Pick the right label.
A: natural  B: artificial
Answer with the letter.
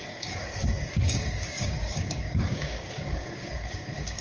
B